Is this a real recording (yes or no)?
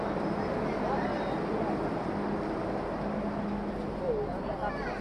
yes